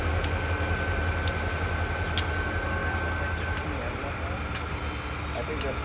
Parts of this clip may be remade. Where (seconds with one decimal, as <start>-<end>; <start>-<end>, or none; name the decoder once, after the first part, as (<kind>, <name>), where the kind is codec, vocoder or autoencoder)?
none